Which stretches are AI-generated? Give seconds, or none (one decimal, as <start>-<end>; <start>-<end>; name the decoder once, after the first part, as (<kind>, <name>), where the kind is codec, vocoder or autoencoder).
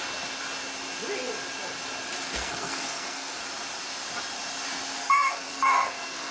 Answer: 2.3-3.4 (codec, SNAC); 5.0-6.3